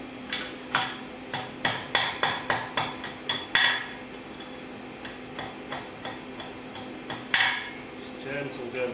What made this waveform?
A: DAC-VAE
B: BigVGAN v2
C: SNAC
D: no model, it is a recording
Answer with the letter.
D